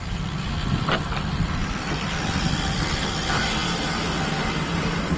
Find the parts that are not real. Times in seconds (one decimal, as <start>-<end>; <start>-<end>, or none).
none